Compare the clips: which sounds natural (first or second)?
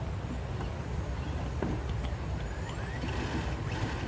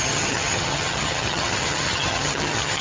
first